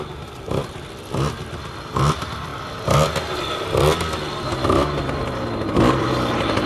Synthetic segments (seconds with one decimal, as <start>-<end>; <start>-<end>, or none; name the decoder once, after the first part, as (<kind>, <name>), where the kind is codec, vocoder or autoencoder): 0.0-2.5 (vocoder, BigVGAN v2); 4.0-6.7

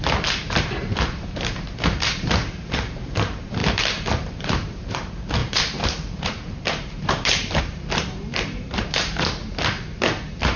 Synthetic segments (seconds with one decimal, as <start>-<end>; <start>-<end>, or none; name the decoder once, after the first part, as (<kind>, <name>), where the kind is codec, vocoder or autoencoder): 0.0-3.6 (vocoder, BigVGAN v2); 4.1-9.4

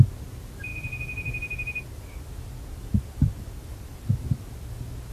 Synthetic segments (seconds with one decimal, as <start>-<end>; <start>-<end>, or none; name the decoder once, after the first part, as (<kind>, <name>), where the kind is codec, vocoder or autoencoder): none

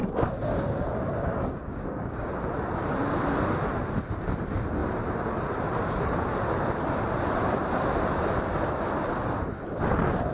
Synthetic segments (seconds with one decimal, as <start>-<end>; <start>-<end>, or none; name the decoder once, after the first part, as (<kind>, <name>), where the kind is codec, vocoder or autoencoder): 0.0-2.3 (codec, DAC)

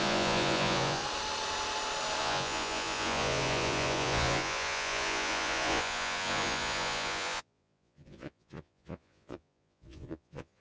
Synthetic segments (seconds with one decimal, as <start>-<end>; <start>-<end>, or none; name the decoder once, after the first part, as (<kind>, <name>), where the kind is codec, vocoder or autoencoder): 0.0-1.0 (vocoder, Vocos); 2.2-10.6